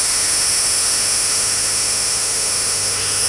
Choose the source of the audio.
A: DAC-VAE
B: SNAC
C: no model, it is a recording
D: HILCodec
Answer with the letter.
A